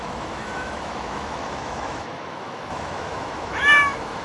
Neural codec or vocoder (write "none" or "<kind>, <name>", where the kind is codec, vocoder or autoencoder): autoencoder, DAC-VAE